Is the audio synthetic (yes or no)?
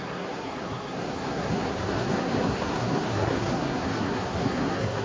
yes